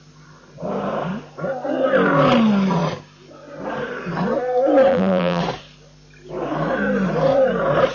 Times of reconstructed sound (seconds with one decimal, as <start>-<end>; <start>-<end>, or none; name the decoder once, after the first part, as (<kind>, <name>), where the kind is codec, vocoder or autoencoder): 4.9-5.4 (vocoder, BigVGAN v2)